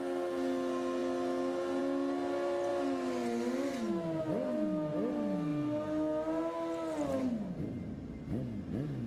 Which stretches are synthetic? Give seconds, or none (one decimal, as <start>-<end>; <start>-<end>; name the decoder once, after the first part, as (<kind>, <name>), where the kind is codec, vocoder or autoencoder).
none